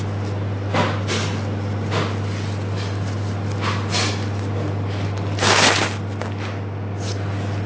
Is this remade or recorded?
recorded